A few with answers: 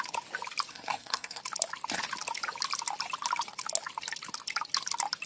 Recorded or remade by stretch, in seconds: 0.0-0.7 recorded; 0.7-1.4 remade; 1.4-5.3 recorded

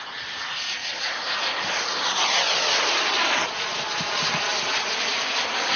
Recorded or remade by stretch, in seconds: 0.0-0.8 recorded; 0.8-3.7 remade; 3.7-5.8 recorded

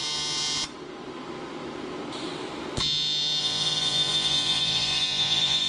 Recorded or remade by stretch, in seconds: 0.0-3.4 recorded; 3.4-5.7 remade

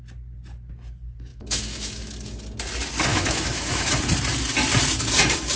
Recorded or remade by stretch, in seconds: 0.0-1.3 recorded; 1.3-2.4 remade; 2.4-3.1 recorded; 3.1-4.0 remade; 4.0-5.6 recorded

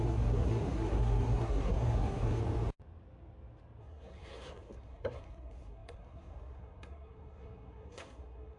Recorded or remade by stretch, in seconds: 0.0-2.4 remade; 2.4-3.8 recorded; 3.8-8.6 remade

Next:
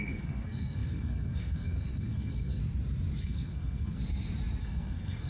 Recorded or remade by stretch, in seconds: 0.0-2.6 remade; 2.6-3.2 recorded; 3.2-4.0 remade; 4.0-4.6 recorded; 4.6-5.3 remade

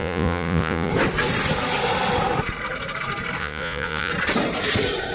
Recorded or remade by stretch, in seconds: 0.0-0.9 remade; 0.9-3.4 recorded; 3.4-4.1 remade; 4.1-5.1 recorded